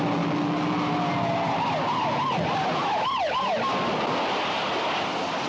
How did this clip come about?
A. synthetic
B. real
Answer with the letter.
B